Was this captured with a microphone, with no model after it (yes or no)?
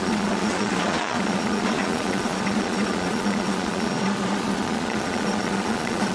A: no